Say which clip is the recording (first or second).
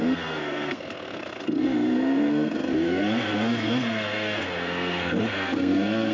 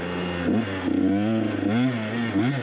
second